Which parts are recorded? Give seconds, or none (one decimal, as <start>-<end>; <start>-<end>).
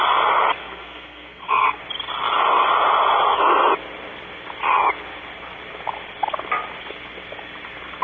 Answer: 0.0-0.6; 1.8-8.0